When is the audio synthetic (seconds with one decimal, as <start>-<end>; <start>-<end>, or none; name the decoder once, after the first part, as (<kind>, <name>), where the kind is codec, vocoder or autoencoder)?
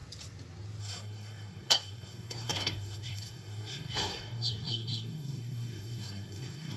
0.8-6.8 (codec, SNAC)